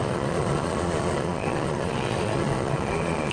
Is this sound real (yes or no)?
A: no